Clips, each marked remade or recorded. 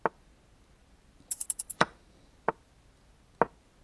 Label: recorded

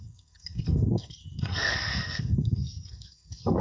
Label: remade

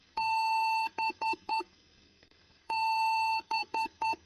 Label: remade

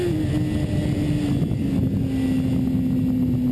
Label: recorded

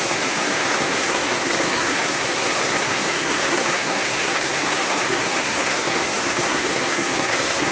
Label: remade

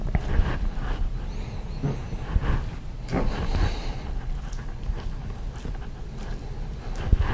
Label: recorded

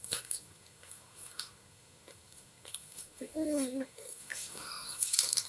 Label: remade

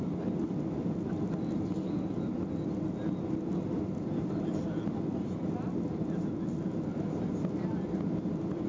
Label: recorded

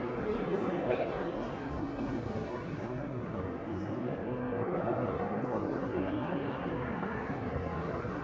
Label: remade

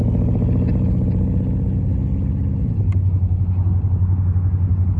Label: recorded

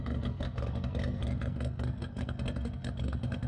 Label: remade